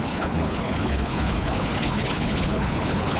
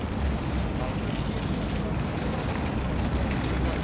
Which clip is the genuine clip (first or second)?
second